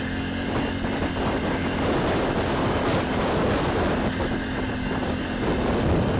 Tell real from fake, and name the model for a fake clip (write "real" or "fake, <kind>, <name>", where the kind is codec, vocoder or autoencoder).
real